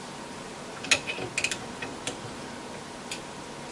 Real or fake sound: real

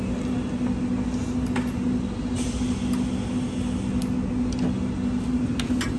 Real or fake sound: real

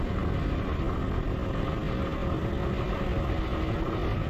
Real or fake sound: real